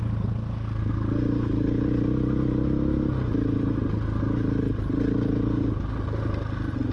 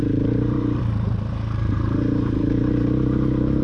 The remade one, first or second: second